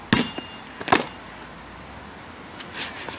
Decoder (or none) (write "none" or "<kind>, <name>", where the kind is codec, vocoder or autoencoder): none